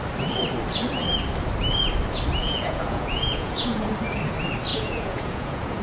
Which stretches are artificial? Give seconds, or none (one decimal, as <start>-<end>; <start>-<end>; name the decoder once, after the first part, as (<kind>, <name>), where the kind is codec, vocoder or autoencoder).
2.4-3.9 (vocoder, Vocos); 4.7-5.8